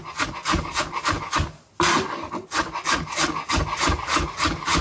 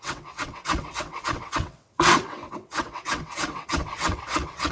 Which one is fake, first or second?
second